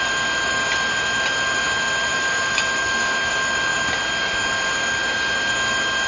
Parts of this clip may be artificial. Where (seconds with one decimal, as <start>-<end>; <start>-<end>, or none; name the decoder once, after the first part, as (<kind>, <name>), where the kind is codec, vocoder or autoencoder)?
2.1-3.3 (autoencoder, DAC-VAE)